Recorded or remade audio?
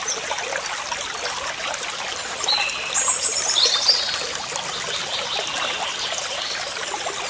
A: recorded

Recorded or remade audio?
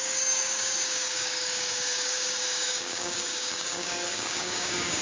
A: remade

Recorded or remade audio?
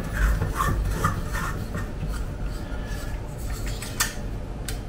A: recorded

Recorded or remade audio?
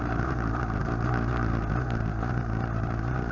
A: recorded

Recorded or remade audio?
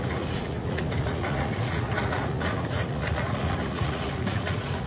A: remade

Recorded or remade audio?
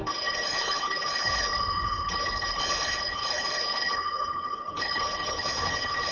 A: remade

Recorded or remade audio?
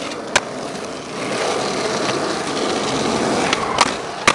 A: recorded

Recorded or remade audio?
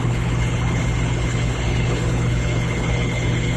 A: remade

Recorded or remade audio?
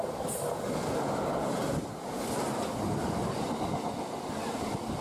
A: recorded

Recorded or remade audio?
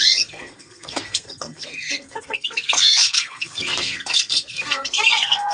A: remade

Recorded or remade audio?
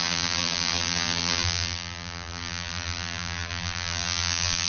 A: remade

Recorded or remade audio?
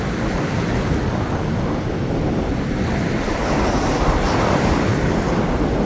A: recorded